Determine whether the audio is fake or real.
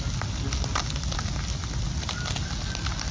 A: real